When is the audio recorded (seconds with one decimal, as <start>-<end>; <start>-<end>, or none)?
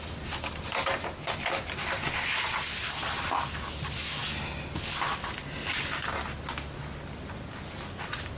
0.0-8.4